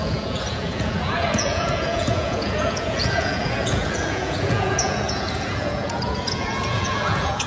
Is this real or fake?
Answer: fake